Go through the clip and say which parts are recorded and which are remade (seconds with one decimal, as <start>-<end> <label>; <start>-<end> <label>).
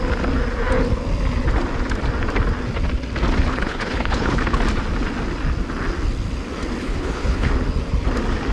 0.0-3.5 recorded; 3.5-4.6 remade; 4.6-6.8 recorded; 6.8-7.5 remade; 7.5-8.5 recorded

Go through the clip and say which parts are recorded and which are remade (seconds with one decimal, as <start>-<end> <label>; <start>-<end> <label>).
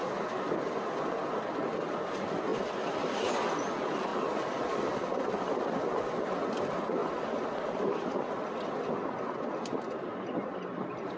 0.0-2.5 recorded; 2.5-3.2 remade; 3.2-4.1 recorded; 4.1-6.1 remade; 6.1-7.0 recorded; 7.0-11.2 remade